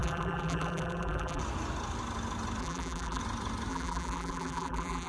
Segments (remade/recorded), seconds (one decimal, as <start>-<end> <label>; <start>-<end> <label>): 0.0-1.4 remade; 1.4-2.6 recorded; 2.6-3.2 remade; 3.2-3.7 recorded; 3.7-5.1 remade